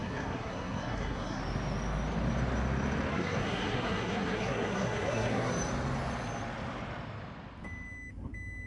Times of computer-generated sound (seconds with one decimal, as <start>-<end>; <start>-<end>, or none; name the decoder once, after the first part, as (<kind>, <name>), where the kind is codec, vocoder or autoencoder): 0.0-1.4 (codec, SNAC); 3.1-5.5